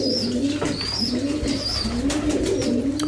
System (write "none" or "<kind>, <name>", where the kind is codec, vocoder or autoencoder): none